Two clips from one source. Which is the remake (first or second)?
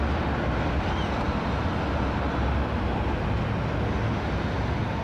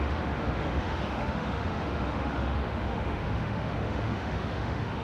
second